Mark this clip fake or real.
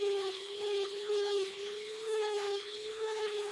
fake